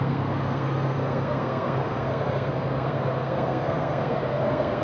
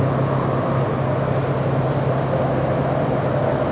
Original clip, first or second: second